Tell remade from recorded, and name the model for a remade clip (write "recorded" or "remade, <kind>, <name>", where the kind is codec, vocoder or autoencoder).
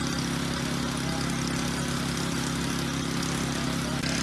recorded